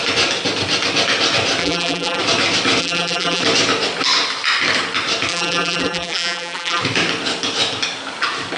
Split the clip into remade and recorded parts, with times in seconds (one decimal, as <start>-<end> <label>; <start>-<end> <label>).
0.0-1.6 recorded; 1.6-2.2 remade; 2.2-2.8 recorded; 2.8-3.4 remade; 3.4-5.3 recorded; 5.3-6.8 remade; 6.8-8.6 recorded